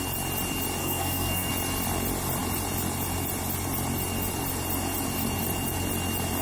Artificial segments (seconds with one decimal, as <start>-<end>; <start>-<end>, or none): 0.8-1.5